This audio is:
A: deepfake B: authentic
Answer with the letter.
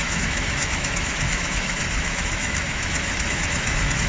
A